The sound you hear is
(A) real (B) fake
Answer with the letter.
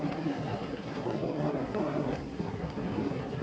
B